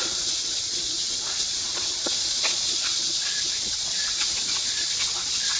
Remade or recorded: remade